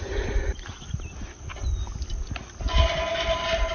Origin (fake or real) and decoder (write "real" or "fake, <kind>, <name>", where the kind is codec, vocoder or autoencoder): real